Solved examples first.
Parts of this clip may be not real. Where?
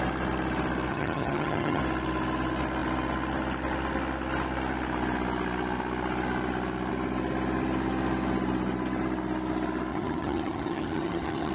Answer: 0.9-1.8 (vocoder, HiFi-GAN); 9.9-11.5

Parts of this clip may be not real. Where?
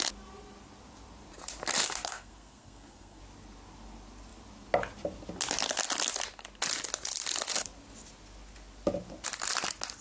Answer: 1.8-3.2 (codec, SNAC)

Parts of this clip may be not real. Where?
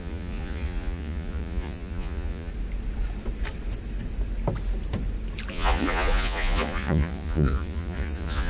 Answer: 0.0-2.5 (vocoder, Vocos); 5.5-8.5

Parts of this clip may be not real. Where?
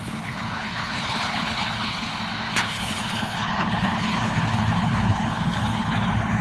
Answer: 0.0-2.1 (codec, HILCodec); 2.6-6.4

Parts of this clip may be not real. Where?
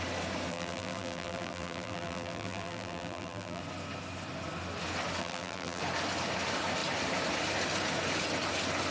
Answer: 0.5-3.6 (vocoder, BigVGAN v2); 5.2-5.8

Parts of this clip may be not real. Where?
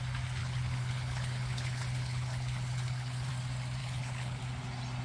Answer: 0.4-3.3 (codec, HILCodec); 3.8-4.4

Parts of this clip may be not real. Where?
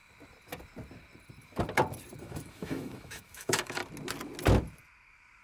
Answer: 2.2-3.8 (autoencoder, DAC-VAE)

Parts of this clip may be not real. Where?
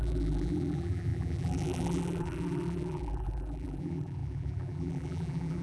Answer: 0.0-5.6 (vocoder, BigVGAN v2)